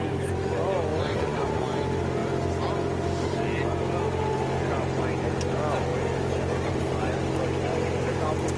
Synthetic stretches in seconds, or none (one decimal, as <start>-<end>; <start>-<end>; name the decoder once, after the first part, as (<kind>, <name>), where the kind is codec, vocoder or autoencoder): 0.9-1.7 (vocoder, Vocos)